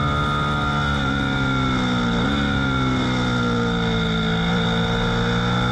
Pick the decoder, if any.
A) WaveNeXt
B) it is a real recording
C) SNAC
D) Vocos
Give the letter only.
B